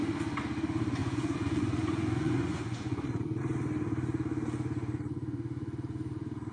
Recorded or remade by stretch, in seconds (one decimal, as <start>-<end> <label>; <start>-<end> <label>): 0.0-1.0 recorded; 1.0-3.4 remade; 3.4-6.5 recorded